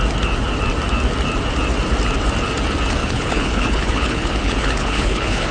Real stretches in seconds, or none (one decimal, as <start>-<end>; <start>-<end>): 0.0-3.0